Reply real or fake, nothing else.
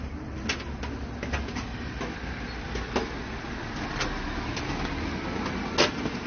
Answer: real